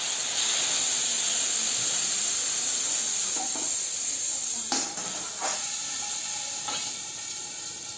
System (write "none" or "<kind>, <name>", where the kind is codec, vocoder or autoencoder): none